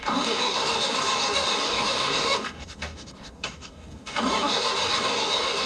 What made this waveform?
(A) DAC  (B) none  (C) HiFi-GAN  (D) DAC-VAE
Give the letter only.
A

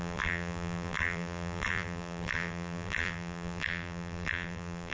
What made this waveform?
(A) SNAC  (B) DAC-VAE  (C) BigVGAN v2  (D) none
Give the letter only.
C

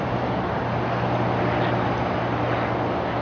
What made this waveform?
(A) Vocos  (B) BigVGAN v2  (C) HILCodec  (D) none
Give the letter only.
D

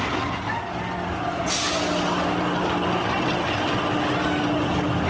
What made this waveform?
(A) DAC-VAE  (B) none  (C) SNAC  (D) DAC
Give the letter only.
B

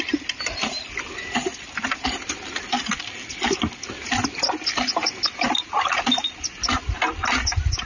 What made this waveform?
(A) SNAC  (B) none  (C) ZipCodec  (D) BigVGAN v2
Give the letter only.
B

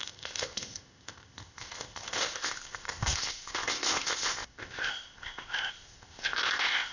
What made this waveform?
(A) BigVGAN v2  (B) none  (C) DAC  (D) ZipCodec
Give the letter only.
D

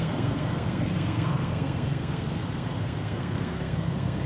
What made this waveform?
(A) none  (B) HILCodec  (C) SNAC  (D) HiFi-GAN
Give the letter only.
C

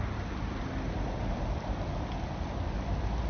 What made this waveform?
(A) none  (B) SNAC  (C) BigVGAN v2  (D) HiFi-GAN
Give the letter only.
A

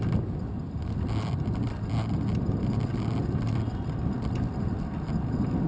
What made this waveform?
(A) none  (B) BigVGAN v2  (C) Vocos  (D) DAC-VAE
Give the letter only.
A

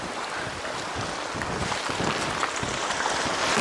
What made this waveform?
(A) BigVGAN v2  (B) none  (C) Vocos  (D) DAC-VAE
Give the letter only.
B